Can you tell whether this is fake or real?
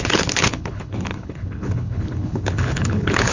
fake